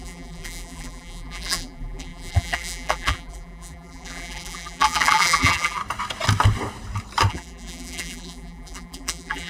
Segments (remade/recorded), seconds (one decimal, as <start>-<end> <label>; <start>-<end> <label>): 0.0-5.8 remade; 5.8-7.3 recorded; 7.3-9.5 remade